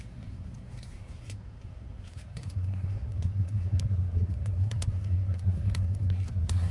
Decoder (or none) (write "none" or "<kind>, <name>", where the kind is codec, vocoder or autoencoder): codec, SNAC